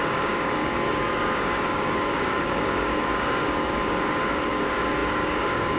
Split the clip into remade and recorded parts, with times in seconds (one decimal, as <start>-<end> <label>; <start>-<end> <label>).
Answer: 0.0-5.8 remade